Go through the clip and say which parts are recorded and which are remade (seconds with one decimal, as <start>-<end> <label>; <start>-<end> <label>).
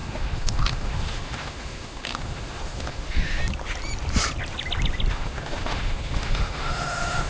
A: 0.0-3.4 remade; 3.4-5.1 recorded; 5.1-7.3 remade